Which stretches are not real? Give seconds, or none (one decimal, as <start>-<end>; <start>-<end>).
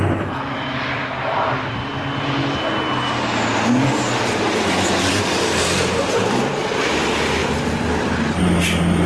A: 0.0-1.9; 5.1-7.4; 8.4-9.1